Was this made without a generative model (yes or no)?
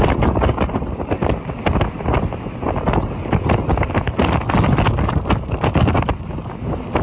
yes